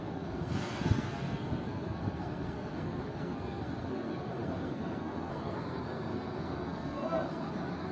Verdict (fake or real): fake